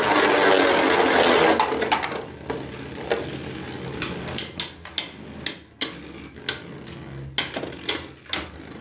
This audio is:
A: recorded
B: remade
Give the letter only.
A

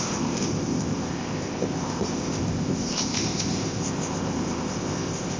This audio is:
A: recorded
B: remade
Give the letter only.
B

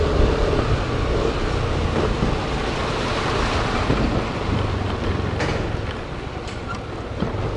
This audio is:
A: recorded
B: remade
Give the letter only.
A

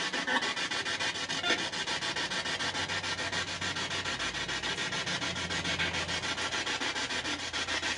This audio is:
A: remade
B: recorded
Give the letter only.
B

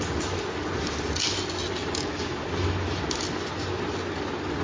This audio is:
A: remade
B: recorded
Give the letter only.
B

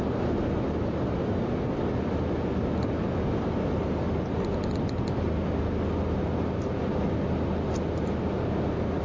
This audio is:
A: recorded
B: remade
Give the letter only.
A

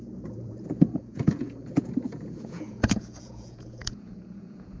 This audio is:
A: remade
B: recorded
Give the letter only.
A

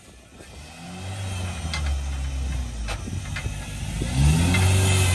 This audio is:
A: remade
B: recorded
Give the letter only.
B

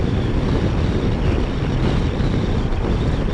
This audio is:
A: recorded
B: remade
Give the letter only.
A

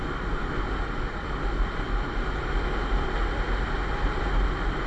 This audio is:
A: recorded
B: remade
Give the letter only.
A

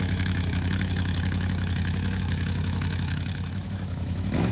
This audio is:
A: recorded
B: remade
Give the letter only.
B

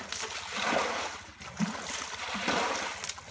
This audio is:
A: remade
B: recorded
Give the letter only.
B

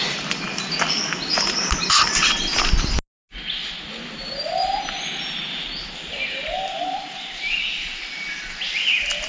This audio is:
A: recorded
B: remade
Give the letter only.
A